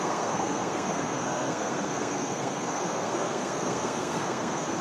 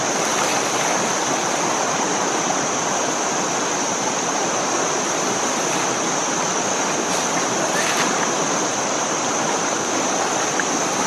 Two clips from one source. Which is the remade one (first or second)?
first